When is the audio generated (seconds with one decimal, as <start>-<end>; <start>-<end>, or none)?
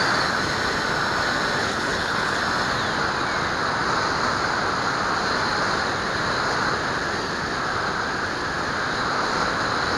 1.6-2.4